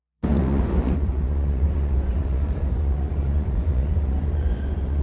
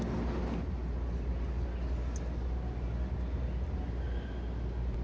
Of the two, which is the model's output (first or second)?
first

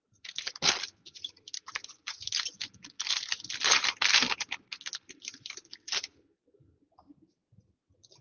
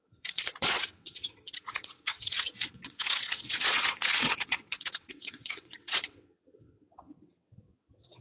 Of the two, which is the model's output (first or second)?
second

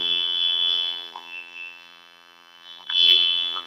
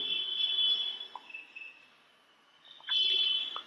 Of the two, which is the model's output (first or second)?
first